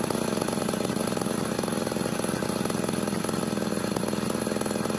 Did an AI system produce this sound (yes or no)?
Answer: no